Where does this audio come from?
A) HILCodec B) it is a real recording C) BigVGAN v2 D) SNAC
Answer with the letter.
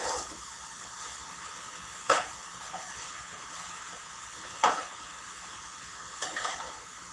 A